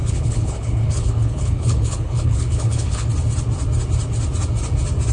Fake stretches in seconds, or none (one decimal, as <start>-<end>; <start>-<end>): 0.0-3.1